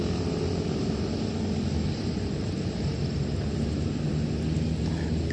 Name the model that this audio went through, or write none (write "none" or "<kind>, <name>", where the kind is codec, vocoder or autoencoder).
none